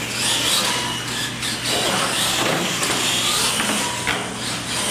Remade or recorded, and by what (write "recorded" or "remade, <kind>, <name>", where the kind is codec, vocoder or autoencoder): recorded